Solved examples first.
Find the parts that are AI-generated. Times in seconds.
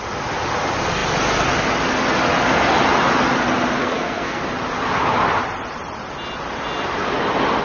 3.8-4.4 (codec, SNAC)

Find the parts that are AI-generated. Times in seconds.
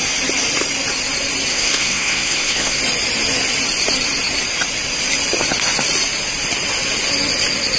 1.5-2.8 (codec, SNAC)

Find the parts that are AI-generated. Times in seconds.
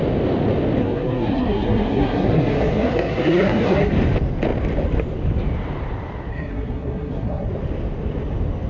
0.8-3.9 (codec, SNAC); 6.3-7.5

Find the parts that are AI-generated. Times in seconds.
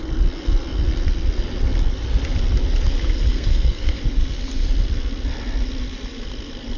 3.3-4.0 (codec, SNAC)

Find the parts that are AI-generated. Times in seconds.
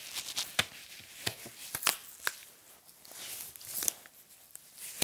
none